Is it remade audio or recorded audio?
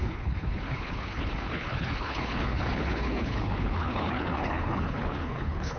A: remade